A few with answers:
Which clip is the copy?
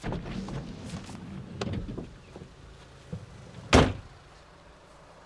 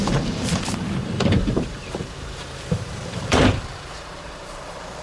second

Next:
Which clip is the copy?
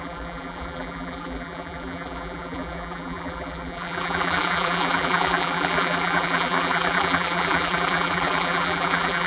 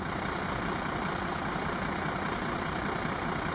first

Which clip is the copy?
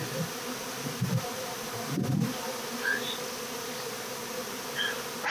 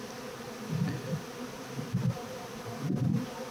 second